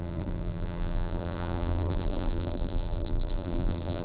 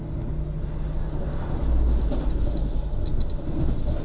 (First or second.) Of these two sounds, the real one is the second